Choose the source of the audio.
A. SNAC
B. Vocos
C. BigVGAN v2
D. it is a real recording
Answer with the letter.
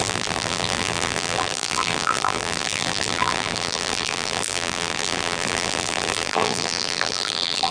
C